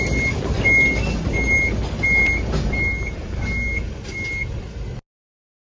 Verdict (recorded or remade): recorded